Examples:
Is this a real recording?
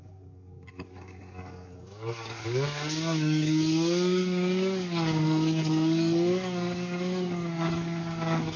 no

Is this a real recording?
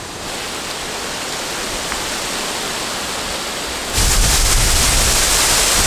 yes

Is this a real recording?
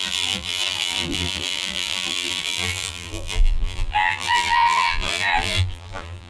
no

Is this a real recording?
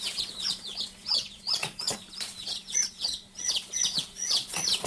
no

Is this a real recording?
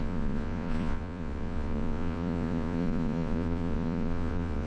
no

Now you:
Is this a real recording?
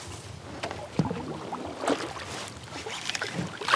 yes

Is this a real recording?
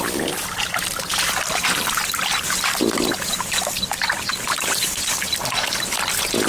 yes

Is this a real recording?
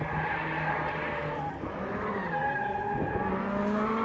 yes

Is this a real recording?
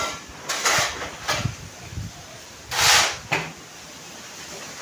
yes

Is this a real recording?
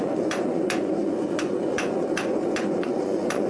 no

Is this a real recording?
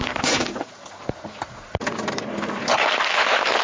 yes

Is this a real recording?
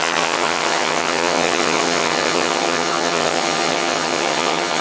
no